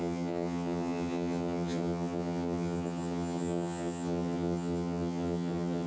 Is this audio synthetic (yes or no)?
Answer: yes